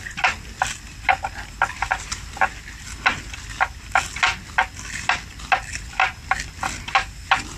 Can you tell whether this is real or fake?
real